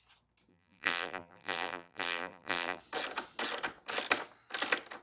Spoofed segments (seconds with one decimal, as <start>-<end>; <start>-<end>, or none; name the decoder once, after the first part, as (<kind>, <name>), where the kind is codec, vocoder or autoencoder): 0.5-2.8 (vocoder, BigVGAN v2)

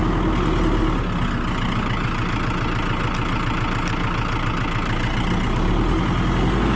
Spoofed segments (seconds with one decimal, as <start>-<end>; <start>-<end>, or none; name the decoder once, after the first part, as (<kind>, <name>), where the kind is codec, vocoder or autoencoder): none

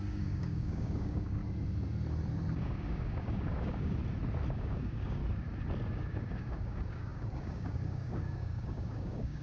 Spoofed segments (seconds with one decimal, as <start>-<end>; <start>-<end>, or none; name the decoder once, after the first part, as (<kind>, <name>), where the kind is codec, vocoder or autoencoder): 0.0-1.4 (codec, DAC); 2.5-4.0; 4.5-5.2; 5.9-9.4

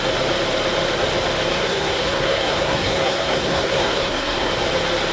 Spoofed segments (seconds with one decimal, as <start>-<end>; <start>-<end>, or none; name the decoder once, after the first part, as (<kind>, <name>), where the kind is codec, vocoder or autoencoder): 1.5-4.5 (codec, SNAC)

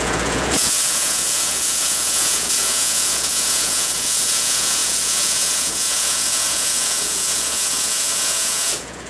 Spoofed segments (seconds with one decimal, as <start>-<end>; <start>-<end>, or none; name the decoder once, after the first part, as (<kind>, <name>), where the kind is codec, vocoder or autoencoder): 0.0-9.1 (vocoder, Vocos)